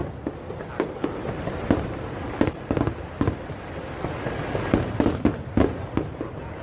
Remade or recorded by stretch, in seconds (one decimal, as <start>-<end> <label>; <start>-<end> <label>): 0.0-6.6 recorded